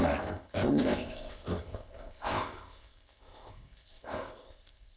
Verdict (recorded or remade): remade